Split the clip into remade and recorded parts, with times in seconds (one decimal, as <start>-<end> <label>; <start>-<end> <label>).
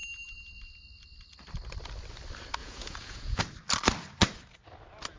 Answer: 0.0-2.6 recorded; 2.6-3.4 remade; 3.4-5.2 recorded